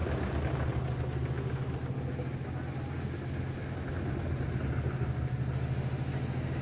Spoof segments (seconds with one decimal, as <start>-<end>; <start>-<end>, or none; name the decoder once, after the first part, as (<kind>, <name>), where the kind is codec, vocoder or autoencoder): none